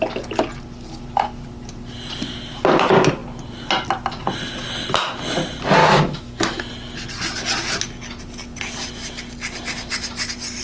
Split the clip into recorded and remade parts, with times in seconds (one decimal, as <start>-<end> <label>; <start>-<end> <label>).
0.0-5.8 recorded; 5.8-6.6 remade; 6.6-10.6 recorded